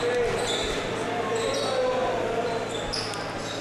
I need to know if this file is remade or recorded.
recorded